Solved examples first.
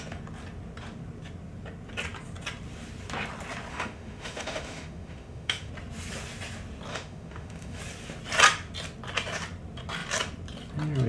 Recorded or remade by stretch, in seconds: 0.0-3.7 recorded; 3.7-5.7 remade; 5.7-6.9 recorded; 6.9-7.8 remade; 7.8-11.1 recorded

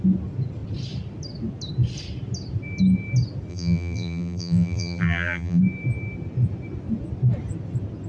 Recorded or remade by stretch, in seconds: 0.0-3.5 recorded; 3.5-5.6 remade; 5.6-8.1 recorded

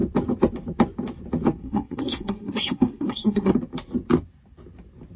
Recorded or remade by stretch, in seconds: 0.0-1.6 recorded; 1.6-3.5 remade; 3.5-5.2 recorded

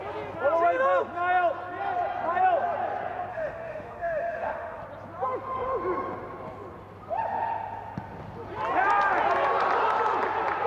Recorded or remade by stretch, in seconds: 0.0-3.3 recorded; 3.3-4.8 remade; 4.8-10.7 recorded